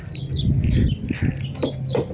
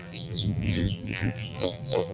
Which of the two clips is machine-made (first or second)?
second